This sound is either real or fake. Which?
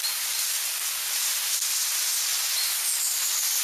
real